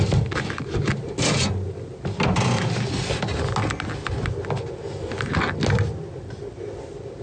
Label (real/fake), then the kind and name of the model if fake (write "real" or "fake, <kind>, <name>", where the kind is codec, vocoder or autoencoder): real